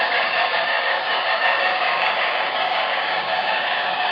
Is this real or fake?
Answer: fake